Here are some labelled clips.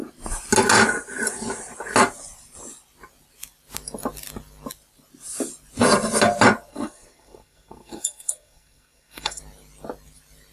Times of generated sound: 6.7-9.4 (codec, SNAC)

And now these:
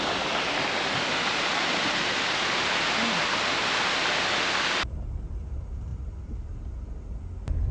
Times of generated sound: none